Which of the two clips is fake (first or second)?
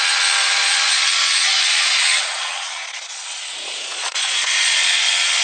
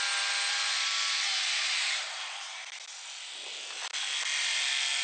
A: first